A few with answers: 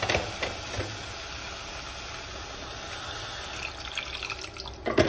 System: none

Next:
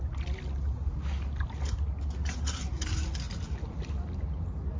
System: none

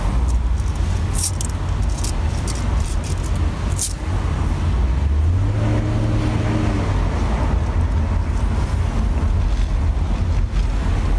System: none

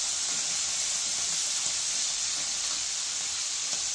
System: none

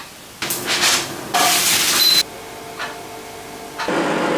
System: none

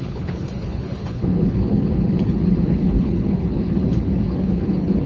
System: codec, HILCodec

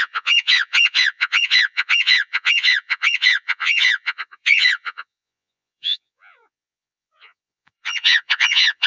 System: vocoder, Vocos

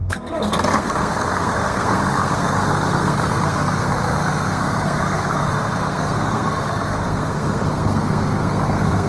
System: codec, SNAC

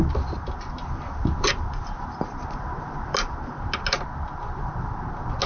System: none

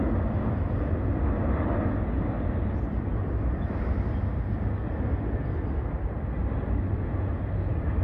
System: none